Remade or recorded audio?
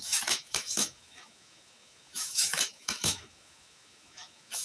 remade